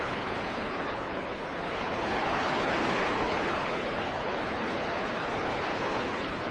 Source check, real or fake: fake